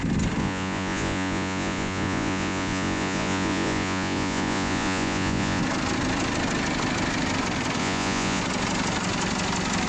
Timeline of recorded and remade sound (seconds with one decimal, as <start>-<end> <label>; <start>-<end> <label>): 0.0-0.4 recorded; 0.4-5.6 remade; 5.6-7.8 recorded; 7.8-8.4 remade; 8.4-9.9 recorded